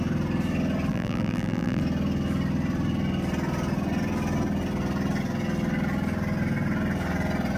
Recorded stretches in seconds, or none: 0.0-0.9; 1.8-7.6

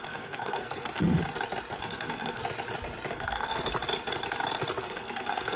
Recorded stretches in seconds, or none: 1.2-1.8; 2.4-3.1; 3.7-4.8

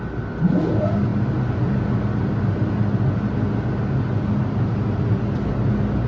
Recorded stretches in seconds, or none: 0.0-6.1